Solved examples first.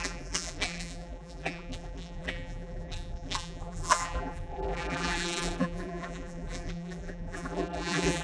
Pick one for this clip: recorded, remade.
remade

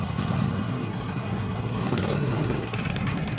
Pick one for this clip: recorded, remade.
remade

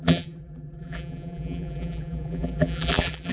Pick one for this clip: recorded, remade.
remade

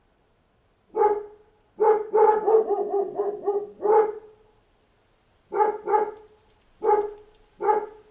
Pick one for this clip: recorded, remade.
recorded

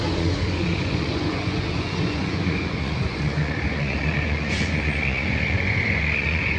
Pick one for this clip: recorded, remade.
remade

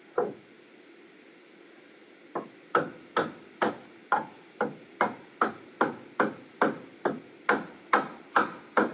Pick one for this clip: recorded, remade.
recorded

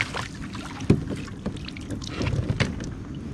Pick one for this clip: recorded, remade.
recorded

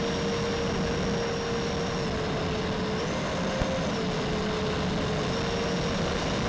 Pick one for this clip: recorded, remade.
recorded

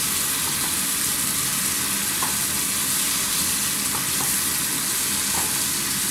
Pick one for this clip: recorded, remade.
recorded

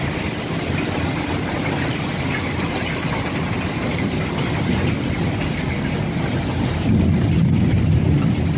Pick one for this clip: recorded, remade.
recorded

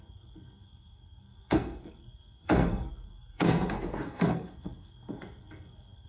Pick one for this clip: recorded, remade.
remade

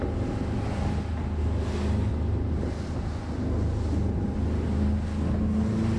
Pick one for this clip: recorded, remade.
recorded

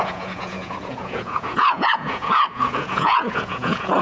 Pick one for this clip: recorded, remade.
remade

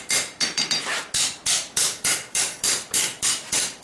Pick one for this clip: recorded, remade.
remade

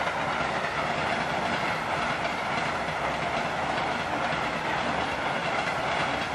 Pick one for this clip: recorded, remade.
recorded